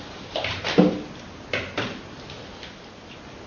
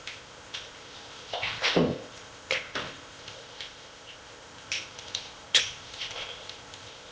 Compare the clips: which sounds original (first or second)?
first